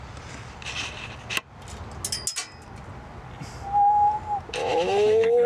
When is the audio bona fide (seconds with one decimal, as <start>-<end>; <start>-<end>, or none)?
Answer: 0.0-4.6